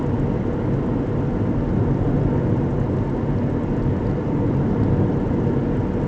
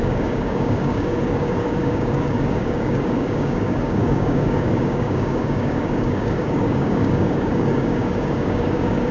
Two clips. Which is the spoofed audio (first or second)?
second